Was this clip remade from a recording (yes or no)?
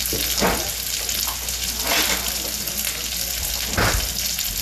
no